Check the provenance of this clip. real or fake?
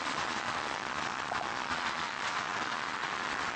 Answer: fake